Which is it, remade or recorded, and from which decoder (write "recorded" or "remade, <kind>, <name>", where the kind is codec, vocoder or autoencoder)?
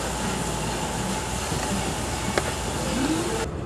recorded